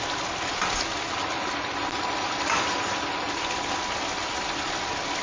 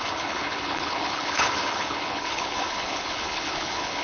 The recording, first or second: first